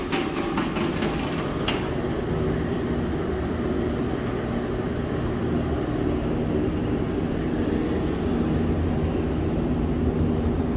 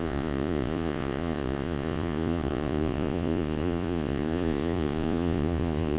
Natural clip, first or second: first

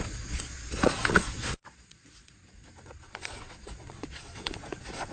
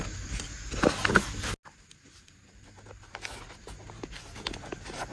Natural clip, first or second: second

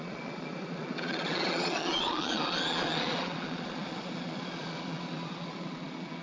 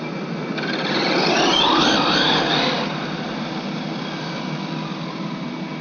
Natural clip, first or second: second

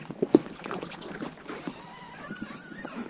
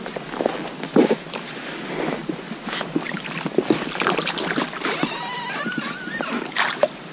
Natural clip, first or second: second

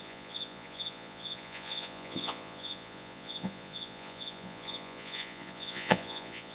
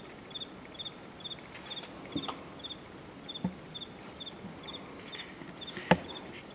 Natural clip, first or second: second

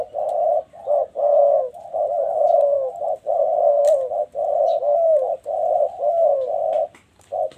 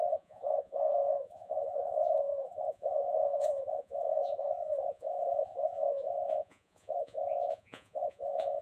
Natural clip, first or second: first